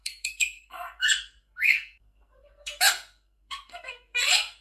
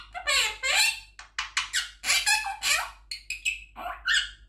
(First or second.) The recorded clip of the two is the second